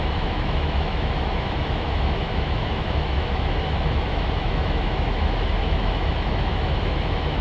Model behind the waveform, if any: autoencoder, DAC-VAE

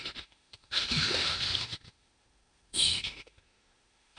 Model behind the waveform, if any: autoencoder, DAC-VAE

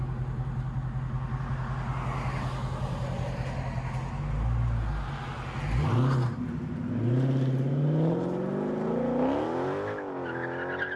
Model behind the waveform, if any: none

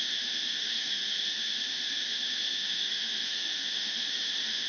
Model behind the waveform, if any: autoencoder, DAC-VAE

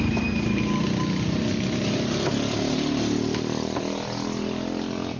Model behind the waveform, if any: none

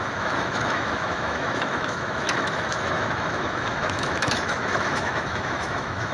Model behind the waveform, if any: autoencoder, DAC-VAE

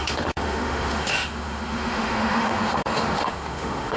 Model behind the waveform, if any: autoencoder, DAC-VAE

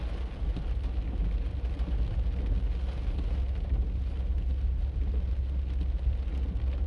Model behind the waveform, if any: none